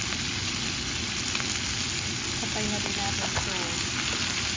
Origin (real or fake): real